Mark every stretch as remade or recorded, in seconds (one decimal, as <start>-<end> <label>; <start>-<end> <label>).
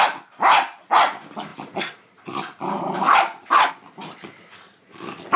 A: 0.0-5.4 recorded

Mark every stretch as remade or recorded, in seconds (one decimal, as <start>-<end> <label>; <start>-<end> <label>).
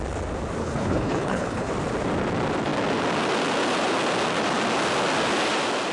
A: 0.0-0.6 recorded; 0.6-1.7 remade; 1.7-5.9 recorded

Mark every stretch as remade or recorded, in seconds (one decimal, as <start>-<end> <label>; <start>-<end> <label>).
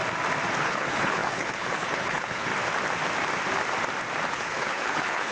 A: 0.0-0.6 recorded; 0.6-2.5 remade; 2.5-4.3 recorded; 4.3-5.3 remade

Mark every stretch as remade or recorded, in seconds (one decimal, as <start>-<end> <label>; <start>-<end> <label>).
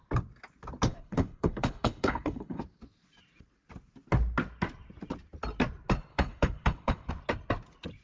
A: 0.0-0.9 recorded; 0.9-2.6 remade; 2.6-6.1 recorded; 6.1-7.1 remade; 7.1-8.0 recorded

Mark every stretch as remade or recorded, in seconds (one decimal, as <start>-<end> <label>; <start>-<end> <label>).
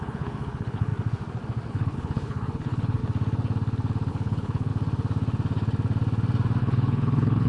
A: 0.0-0.9 remade; 0.9-1.7 recorded; 1.7-3.0 remade; 3.0-4.1 recorded; 4.1-4.7 remade; 4.7-6.6 recorded; 6.6-7.5 remade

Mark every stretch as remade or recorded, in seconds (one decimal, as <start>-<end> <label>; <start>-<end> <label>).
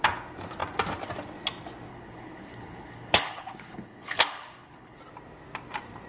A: 0.0-1.9 recorded; 1.9-5.0 remade; 5.0-6.1 recorded